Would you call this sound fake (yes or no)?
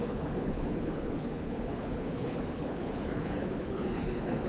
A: yes